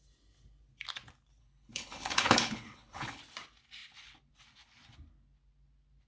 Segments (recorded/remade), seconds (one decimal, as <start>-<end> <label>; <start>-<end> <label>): 0.0-1.4 recorded; 1.4-3.2 remade; 3.2-6.1 recorded